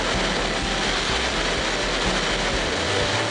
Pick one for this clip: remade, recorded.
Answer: recorded